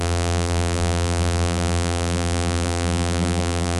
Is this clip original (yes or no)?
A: no